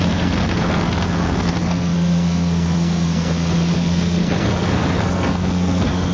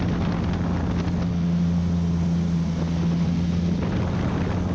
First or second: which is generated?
first